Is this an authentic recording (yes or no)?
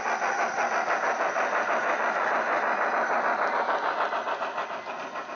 yes